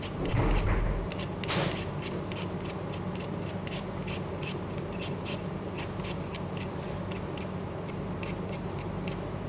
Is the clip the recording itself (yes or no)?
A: yes